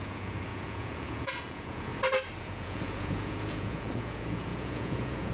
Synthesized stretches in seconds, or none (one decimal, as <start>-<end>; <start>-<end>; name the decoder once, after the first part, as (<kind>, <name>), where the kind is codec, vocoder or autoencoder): 0.0-1.9 (vocoder, Vocos); 2.4-5.3